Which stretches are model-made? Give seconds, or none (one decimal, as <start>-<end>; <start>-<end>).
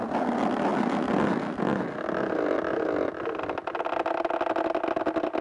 none